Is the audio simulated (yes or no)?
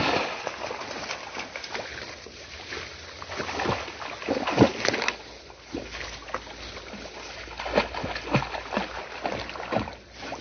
no